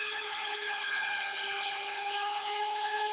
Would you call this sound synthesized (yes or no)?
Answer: yes